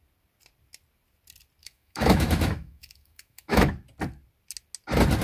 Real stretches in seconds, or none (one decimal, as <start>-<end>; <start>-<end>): 0.0-1.6; 3.7-5.2